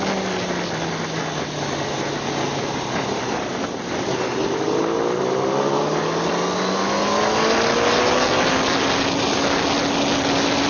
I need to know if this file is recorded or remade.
recorded